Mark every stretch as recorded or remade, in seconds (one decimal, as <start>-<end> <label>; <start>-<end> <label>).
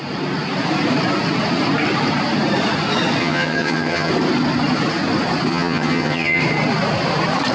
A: 0.0-3.2 recorded; 3.2-4.1 remade; 4.1-5.5 recorded; 5.5-6.4 remade; 6.4-7.5 recorded